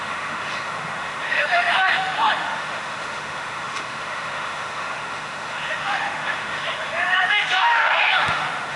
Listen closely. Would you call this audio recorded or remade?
remade